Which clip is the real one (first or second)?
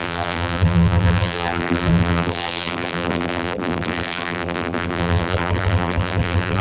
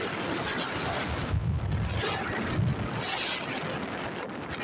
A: second